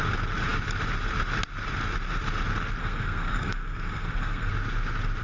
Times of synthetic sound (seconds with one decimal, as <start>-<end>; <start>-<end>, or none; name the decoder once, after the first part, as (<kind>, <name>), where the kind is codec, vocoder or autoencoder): 2.8-4.5 (codec, SNAC)